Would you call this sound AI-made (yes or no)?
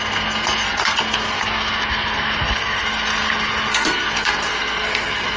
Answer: yes